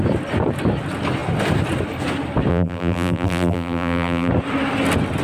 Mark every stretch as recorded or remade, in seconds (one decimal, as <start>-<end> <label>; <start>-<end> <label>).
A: 0.0-2.5 recorded; 2.5-4.3 remade; 4.3-5.2 recorded